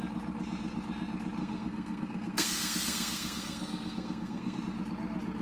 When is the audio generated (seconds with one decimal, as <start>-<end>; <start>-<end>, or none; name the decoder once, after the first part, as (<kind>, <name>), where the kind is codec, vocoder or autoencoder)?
1.4-4.6 (codec, SNAC)